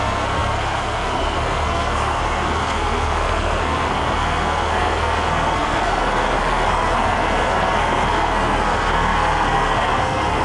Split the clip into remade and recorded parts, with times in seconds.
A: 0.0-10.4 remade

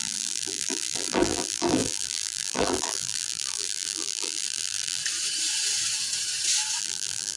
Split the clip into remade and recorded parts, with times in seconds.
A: 0.0-5.0 remade; 5.0-6.8 recorded; 6.8-7.4 remade

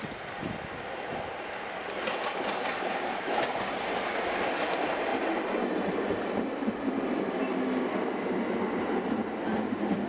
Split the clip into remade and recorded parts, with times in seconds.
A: 0.0-10.1 recorded

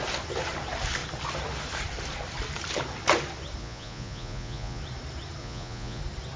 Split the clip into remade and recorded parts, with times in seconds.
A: 0.0-3.6 recorded; 3.6-4.8 remade; 4.8-5.4 recorded; 5.4-6.0 remade; 6.0-6.4 recorded

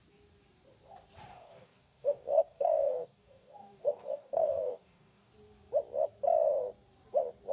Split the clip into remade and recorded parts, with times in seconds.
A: 0.0-1.3 recorded; 1.3-5.3 remade; 5.3-7.5 recorded

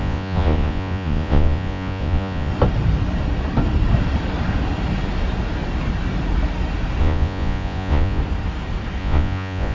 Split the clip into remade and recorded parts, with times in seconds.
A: 0.0-2.5 remade; 2.5-7.0 recorded; 7.0-8.2 remade; 8.2-9.0 recorded; 9.0-9.7 remade